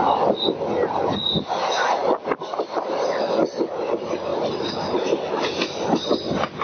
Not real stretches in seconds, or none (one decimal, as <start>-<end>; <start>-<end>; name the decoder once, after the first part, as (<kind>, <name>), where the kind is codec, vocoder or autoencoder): none